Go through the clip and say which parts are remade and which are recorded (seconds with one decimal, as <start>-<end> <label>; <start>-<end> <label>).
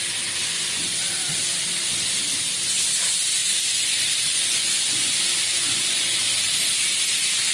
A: 0.0-0.4 recorded; 0.4-1.0 remade; 1.0-3.4 recorded; 3.4-6.4 remade; 6.4-7.5 recorded